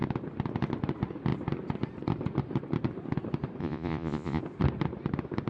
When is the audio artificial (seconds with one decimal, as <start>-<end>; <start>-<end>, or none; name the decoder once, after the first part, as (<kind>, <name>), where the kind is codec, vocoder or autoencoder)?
3.6-4.4 (vocoder, Vocos)